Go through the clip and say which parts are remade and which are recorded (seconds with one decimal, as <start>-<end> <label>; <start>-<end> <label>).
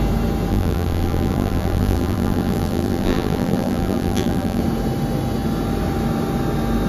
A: 0.0-0.5 recorded; 0.5-4.6 remade; 4.6-6.9 recorded